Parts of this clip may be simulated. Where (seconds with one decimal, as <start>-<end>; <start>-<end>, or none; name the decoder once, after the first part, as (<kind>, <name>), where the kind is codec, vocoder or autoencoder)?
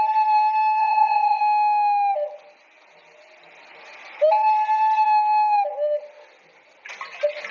0.8-1.4 (vocoder, HiFi-GAN)